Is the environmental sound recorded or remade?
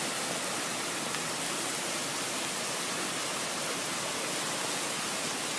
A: recorded